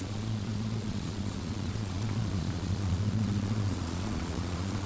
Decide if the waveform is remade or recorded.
remade